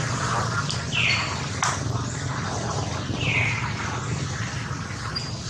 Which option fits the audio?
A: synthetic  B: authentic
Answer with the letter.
B